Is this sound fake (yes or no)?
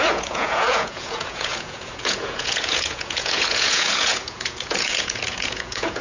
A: yes